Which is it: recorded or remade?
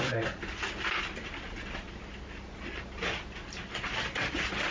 recorded